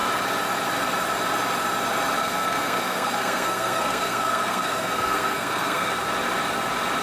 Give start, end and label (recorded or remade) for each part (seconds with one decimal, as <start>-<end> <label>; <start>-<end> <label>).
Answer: 0.0-2.2 recorded; 2.2-5.9 remade; 5.9-7.0 recorded